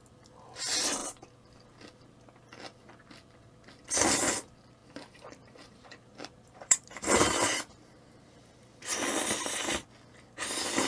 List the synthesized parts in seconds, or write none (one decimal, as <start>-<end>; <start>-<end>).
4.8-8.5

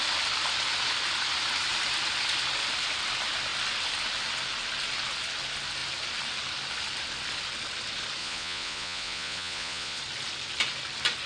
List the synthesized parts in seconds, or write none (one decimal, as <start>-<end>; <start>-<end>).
8.2-10.0

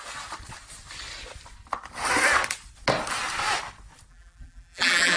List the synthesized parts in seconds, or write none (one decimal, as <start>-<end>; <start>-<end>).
4.1-5.2